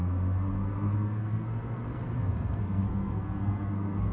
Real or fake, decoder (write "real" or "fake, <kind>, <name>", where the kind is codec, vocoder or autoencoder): fake, codec, SNAC